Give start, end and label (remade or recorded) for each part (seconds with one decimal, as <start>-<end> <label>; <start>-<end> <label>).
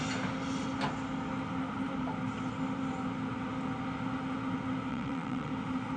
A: 0.0-4.9 recorded; 4.9-5.5 remade; 5.5-6.0 recorded